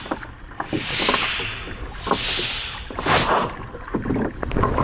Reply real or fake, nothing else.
real